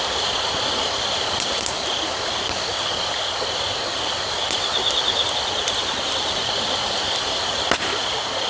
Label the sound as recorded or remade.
recorded